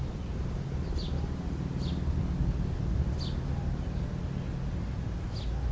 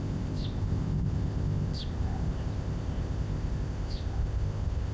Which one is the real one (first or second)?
first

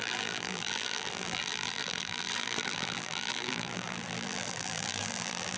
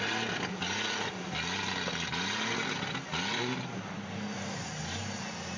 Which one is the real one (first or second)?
second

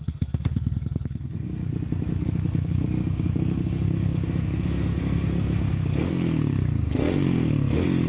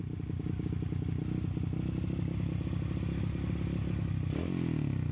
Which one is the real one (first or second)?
second